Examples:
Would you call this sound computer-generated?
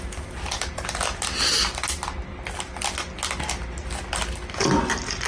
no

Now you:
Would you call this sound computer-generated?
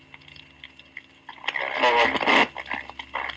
no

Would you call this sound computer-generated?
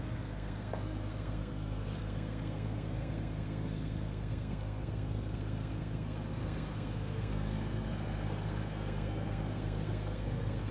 yes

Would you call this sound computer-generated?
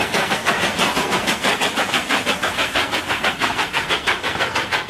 yes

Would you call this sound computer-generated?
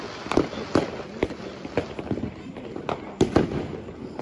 no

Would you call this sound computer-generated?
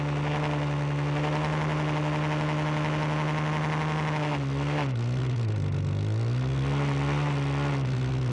no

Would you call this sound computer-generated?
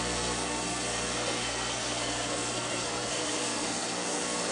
yes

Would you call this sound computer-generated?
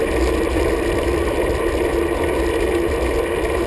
no